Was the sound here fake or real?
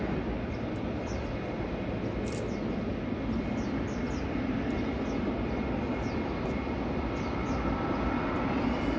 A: real